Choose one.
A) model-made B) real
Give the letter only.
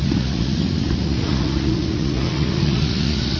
A